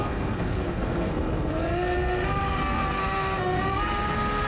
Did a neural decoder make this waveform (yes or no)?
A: yes